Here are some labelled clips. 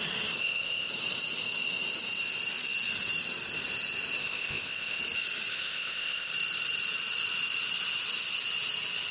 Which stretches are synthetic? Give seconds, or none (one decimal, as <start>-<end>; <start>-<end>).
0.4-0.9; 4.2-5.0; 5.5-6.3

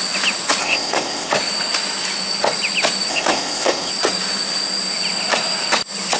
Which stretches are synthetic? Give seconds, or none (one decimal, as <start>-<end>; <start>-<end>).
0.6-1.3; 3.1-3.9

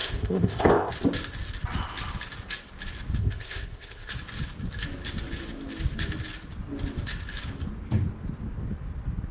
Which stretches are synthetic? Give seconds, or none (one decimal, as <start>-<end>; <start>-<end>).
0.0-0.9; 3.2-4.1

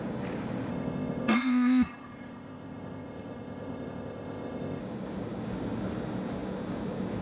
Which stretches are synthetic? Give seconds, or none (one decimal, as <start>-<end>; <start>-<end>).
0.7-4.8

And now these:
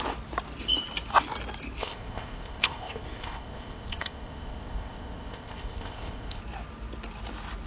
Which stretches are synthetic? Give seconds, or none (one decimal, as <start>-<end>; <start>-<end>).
1.8-6.4